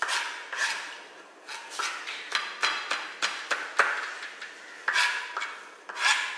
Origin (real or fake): real